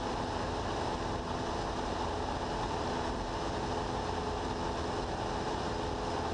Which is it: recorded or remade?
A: recorded